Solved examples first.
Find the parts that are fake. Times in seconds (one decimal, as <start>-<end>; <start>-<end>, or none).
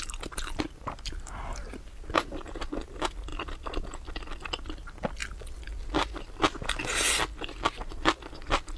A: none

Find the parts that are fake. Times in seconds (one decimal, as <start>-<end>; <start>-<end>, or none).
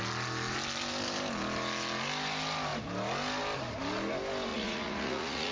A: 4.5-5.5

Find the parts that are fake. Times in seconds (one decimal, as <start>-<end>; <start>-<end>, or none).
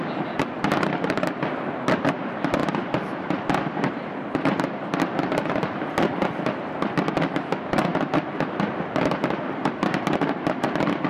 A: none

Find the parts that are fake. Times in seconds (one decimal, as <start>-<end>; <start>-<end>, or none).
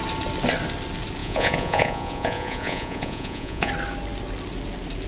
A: 1.2-3.7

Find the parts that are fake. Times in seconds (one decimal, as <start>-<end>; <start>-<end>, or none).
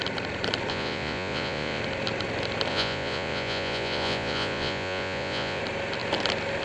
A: 0.7-1.8; 2.7-5.6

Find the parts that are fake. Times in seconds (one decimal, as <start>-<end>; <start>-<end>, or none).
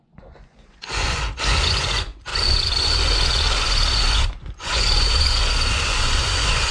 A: 0.0-6.7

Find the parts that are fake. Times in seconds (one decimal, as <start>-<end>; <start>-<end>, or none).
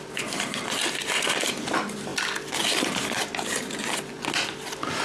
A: none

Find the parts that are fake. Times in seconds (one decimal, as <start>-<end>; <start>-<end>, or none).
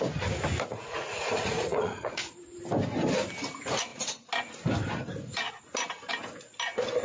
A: 0.7-2.3